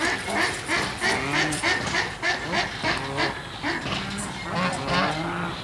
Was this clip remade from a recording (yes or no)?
no